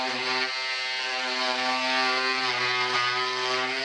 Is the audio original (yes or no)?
yes